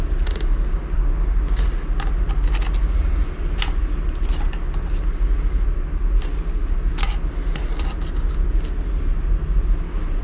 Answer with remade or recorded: recorded